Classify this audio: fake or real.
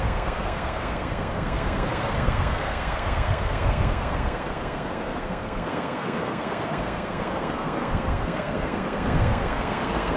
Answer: fake